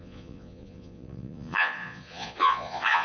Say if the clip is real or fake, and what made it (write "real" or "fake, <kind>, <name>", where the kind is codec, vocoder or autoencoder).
fake, vocoder, Vocos